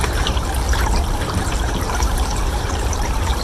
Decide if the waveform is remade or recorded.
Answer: remade